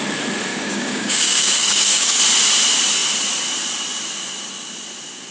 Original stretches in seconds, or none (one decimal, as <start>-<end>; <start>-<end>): 0.0-0.5; 2.2-5.3